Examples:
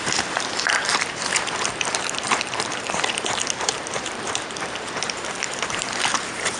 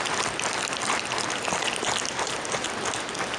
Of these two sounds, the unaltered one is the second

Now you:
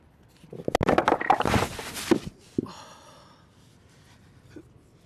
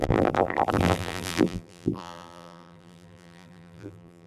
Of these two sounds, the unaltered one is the first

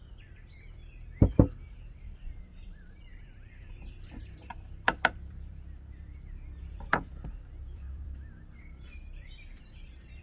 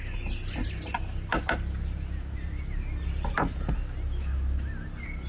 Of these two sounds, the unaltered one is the second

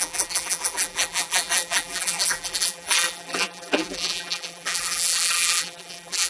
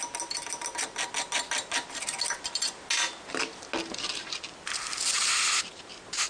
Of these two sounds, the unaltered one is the second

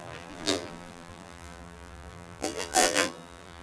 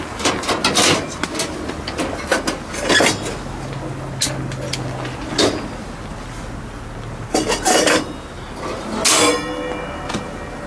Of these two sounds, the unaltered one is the second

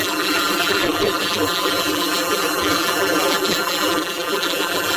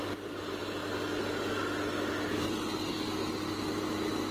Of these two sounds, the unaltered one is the second